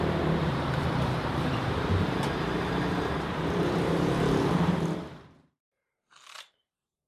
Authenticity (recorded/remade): remade